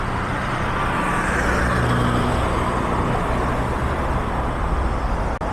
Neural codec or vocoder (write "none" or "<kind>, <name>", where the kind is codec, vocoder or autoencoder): none